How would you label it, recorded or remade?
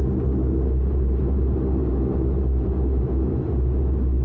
recorded